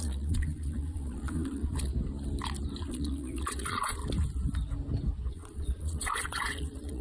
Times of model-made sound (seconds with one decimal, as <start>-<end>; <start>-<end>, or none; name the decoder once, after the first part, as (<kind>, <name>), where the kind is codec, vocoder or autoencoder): 0.0-1.9 (vocoder, Vocos); 2.9-4.0; 5.3-7.0